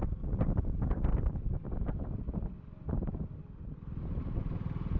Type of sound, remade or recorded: recorded